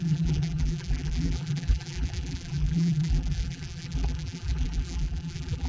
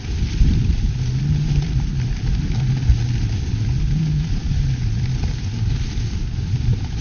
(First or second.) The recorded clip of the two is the second